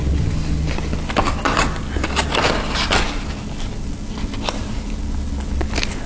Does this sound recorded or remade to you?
recorded